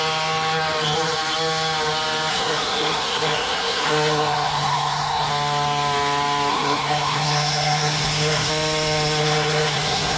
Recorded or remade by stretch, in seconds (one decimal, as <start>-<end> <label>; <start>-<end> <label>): 0.0-2.3 recorded; 2.3-5.3 remade; 5.3-6.5 recorded; 6.5-8.5 remade; 8.5-9.2 recorded; 9.2-10.2 remade